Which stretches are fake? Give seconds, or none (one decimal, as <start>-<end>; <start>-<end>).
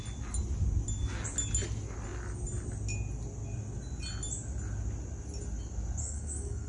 6.0-6.7